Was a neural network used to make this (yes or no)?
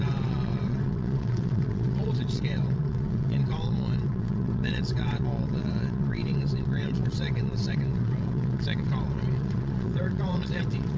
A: yes